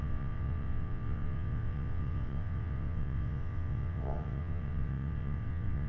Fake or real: fake